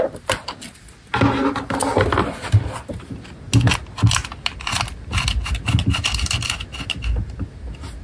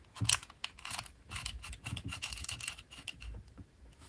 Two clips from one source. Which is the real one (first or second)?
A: first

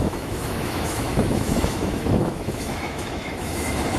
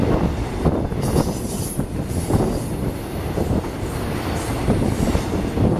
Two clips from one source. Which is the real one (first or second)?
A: second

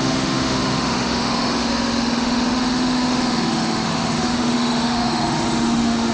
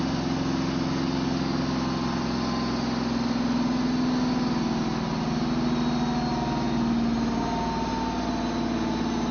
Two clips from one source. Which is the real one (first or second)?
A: second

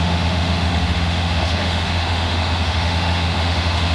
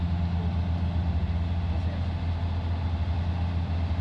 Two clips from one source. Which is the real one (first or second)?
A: second